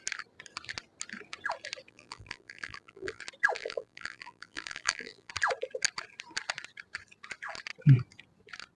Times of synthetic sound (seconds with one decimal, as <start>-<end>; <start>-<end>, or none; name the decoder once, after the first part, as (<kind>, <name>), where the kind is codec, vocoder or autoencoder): 1.9-3.2 (vocoder, BigVGAN v2); 3.6-5.3